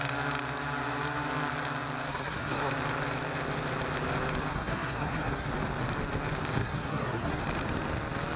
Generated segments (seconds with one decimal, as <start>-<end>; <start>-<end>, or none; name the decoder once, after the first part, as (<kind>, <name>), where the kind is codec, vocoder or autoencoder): 2.1-2.7 (codec, SNAC); 4.5-5.5; 6.6-7.4